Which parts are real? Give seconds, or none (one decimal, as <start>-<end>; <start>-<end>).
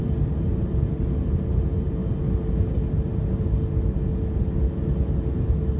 0.0-5.8